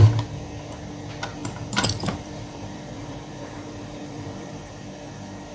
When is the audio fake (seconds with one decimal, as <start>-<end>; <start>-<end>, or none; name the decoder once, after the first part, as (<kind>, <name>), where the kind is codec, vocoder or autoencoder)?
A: 1.4-4.7 (vocoder, BigVGAN v2)